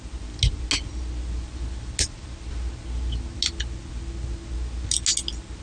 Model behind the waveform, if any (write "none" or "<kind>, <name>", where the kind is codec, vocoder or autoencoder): none